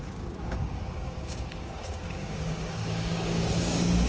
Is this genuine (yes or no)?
no